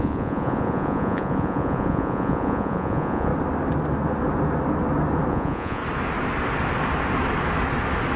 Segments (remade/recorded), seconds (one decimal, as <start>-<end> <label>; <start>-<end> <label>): 0.0-3.3 remade; 3.3-5.3 recorded; 5.3-5.8 remade; 5.8-8.2 recorded

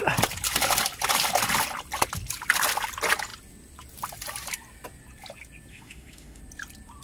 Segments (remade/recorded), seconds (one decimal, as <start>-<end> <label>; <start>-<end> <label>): 0.0-5.7 recorded; 5.7-6.4 remade; 6.4-7.0 recorded

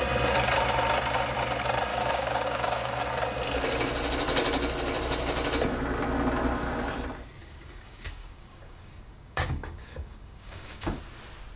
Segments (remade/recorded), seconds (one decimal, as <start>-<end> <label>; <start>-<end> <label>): 0.0-1.9 recorded; 1.9-3.2 remade; 3.2-7.4 recorded; 7.4-11.0 remade; 11.0-11.6 recorded